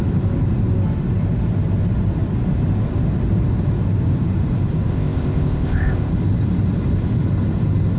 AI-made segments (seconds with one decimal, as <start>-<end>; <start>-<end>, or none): 4.9-6.1